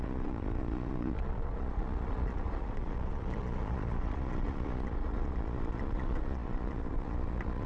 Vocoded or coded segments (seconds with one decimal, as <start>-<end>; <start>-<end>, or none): 0.0-7.7